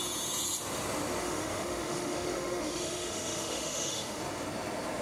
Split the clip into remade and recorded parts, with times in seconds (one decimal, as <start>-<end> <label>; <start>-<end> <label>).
0.0-1.2 recorded; 1.2-4.2 remade; 4.2-5.0 recorded